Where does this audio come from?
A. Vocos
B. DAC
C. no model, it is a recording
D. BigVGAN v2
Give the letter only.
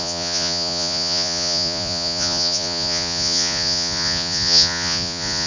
A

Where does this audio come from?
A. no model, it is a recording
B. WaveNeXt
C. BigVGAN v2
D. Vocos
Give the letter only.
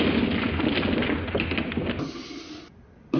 A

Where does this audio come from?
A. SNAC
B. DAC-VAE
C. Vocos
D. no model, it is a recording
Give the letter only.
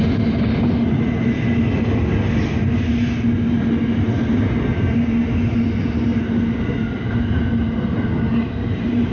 D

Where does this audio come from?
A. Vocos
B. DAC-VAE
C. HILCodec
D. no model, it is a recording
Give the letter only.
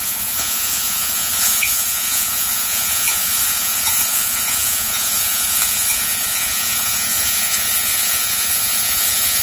A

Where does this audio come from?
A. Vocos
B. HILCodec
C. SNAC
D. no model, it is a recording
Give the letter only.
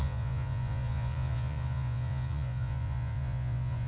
A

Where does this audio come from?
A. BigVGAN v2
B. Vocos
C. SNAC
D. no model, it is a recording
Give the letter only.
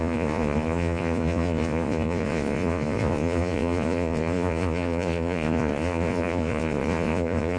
B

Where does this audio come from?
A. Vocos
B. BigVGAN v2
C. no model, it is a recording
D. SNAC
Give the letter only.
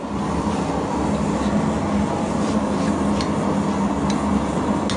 C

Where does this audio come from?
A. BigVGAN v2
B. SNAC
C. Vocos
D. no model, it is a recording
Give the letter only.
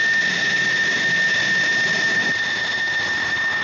D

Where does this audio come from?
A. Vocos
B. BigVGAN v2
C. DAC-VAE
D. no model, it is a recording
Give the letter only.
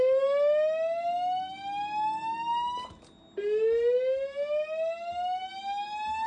D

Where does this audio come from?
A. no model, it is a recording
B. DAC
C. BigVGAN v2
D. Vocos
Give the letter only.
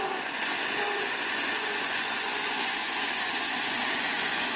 D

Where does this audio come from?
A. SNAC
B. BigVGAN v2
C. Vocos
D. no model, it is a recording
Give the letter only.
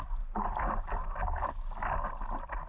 D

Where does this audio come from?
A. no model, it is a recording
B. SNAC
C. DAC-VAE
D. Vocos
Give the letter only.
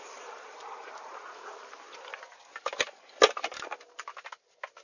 A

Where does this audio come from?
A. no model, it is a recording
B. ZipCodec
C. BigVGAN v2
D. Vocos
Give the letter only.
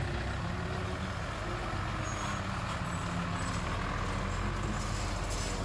A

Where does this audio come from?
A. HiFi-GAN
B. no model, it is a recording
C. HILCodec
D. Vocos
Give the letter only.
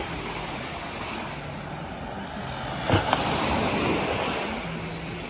B